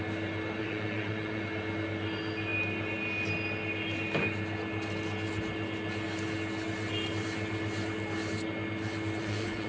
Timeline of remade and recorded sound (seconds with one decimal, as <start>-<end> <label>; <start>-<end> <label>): 0.0-0.6 recorded; 0.6-1.4 remade; 1.4-9.2 recorded; 9.2-9.7 remade